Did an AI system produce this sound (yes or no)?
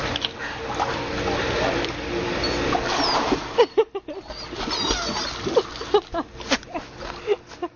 no